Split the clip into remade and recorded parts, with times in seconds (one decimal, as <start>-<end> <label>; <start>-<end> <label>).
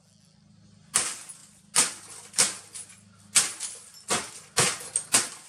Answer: 0.0-5.5 recorded